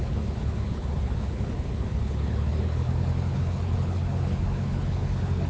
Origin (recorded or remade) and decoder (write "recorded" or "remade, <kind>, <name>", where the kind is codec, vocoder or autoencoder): remade, codec, HILCodec